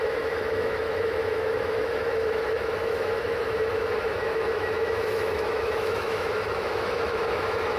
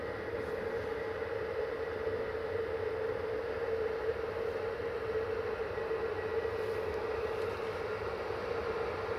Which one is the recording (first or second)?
second